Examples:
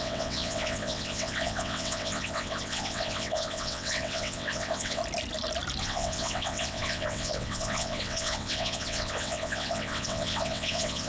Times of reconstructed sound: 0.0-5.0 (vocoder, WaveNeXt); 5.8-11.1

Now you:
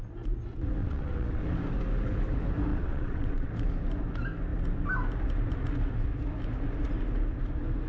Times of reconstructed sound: 0.8-1.4 (vocoder, WaveNeXt); 2.7-3.5

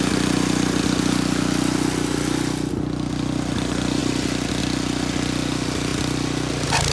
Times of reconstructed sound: none

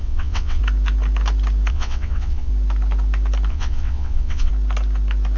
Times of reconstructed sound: 0.0-0.6 (vocoder, WaveNeXt); 1.7-2.5; 3.5-4.5

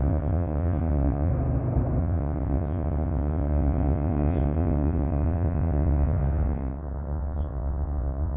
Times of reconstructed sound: 0.0-1.3 (vocoder, WaveNeXt); 2.0-8.4